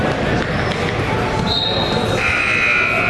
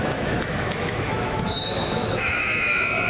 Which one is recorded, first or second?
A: first